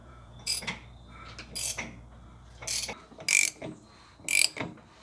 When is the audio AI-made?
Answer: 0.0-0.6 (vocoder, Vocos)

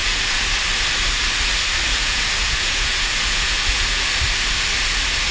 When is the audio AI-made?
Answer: 0.0-0.5 (vocoder, Vocos); 1.9-4.0